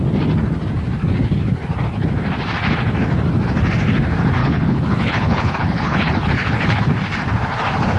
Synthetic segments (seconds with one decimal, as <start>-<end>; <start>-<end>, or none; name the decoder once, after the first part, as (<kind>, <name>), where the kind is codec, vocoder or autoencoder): 4.4-6.8 (codec, HILCodec)